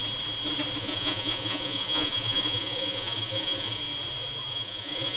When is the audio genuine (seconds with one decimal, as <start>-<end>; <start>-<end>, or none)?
0.0-0.8; 3.8-4.5